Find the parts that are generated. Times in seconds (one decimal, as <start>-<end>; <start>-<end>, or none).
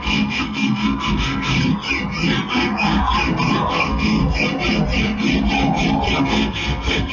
0.0-1.7; 2.5-3.0; 3.7-4.2; 6.2-7.1